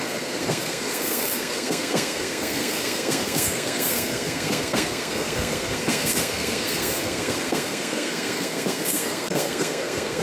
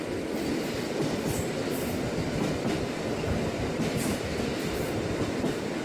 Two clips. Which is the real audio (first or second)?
second